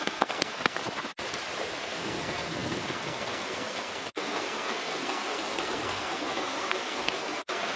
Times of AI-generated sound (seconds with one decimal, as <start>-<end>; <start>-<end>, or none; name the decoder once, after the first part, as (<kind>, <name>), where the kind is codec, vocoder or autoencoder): 0.0-0.8 (codec, SNAC); 1.8-7.8